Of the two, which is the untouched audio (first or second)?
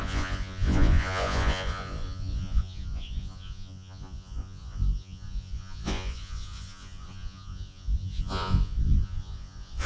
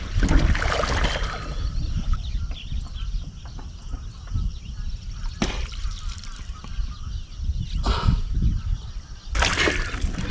second